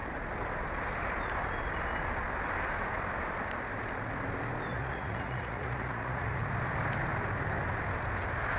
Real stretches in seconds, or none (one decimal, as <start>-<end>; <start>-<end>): 0.0-4.7; 6.4-8.6